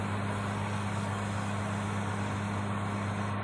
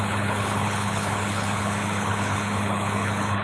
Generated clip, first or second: second